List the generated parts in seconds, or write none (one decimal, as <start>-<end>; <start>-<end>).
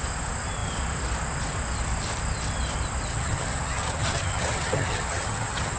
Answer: 3.1-5.8